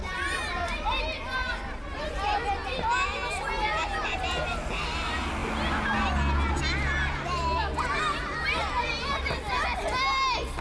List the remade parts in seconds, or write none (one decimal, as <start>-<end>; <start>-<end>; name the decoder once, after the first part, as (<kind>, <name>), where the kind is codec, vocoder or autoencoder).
0.0-1.0 (vocoder, BigVGAN v2)